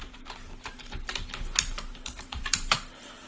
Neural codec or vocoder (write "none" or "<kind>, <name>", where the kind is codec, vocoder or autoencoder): vocoder, BigVGAN v2